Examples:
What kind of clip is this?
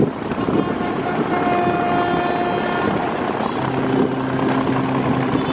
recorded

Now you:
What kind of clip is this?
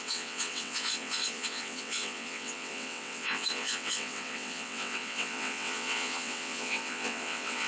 remade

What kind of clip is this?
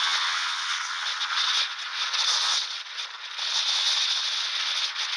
remade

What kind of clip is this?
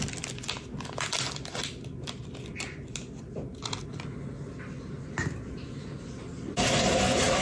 recorded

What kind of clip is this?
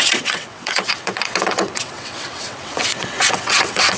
remade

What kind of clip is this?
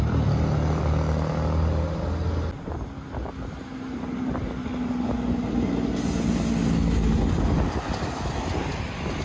recorded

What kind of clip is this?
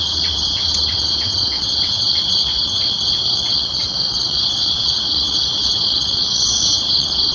remade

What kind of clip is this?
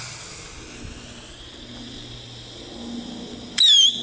recorded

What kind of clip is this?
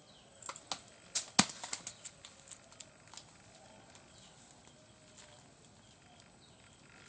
recorded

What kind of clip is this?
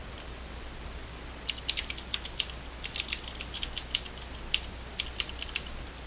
recorded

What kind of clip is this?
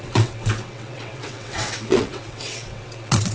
remade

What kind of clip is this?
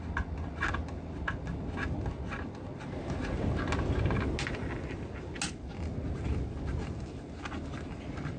recorded